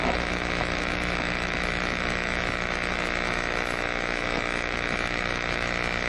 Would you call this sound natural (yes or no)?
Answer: no